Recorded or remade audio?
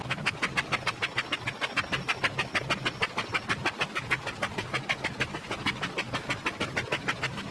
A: recorded